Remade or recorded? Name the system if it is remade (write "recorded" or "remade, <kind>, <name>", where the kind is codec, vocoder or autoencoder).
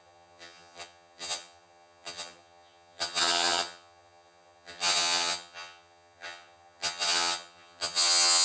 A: remade, vocoder, HiFi-GAN